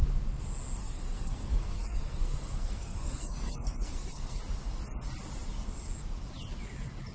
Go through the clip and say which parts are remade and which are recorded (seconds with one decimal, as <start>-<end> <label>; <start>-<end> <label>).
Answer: 0.0-0.8 recorded; 0.8-4.4 remade; 4.4-7.1 recorded